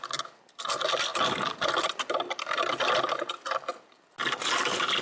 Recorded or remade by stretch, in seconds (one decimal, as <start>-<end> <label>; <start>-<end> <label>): 0.0-5.0 recorded